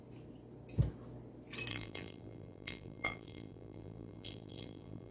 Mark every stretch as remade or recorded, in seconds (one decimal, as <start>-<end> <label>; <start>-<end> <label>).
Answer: 0.0-1.7 recorded; 1.7-5.1 remade